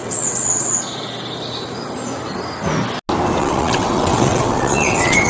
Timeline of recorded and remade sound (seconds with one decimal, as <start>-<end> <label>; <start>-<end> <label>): 0.0-0.8 remade; 0.8-3.4 recorded; 3.4-5.3 remade